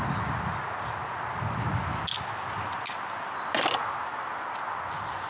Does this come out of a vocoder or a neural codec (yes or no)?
no